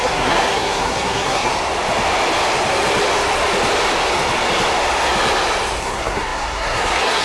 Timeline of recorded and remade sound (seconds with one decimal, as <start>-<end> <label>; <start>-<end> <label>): 0.0-1.5 remade; 1.5-5.8 recorded; 5.8-7.2 remade